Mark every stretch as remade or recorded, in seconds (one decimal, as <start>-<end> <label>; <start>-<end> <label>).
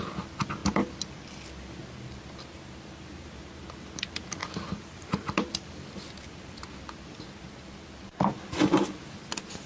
0.0-9.7 recorded